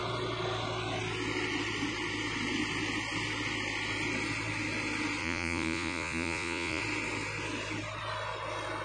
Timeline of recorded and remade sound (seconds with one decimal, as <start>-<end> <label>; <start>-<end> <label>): 0.0-5.2 recorded; 5.2-6.8 remade; 6.8-8.8 recorded